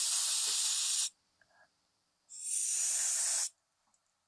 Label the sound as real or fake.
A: fake